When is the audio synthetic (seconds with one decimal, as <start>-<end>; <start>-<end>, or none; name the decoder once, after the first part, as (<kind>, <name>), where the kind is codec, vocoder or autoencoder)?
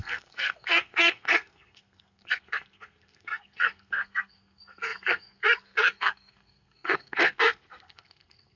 0.0-8.6 (codec, SNAC)